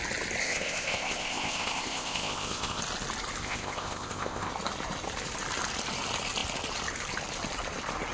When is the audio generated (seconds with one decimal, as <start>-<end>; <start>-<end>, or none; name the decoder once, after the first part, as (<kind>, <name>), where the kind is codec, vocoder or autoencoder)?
0.4-2.8 (codec, ZipCodec); 3.4-4.5